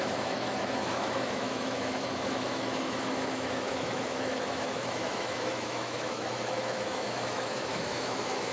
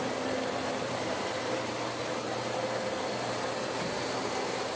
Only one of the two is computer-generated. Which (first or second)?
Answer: first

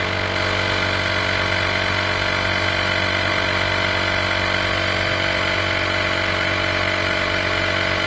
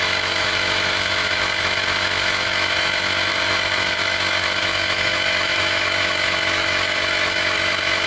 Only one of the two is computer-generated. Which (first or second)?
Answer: second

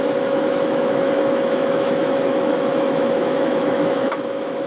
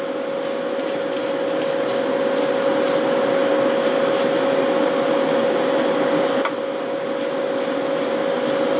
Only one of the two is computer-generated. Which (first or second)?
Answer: first